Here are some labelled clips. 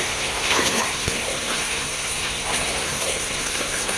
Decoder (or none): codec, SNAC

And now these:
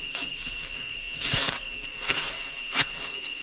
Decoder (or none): codec, SNAC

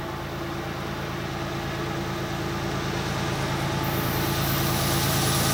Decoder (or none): none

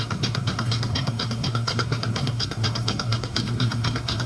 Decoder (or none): codec, SNAC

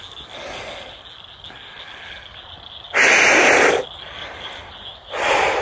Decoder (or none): none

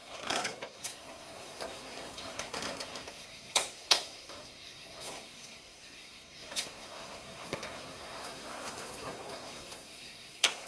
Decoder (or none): codec, SNAC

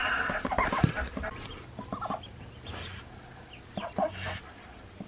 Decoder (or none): none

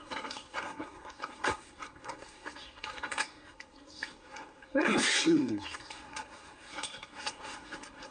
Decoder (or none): codec, SNAC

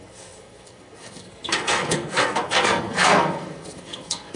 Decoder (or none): codec, SNAC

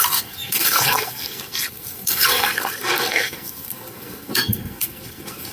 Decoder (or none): codec, SNAC